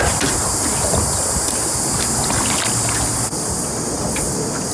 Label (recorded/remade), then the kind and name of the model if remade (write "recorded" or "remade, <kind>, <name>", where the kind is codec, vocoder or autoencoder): recorded